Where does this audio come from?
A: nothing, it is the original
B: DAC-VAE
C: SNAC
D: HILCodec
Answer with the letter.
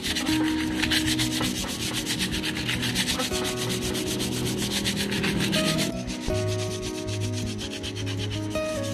A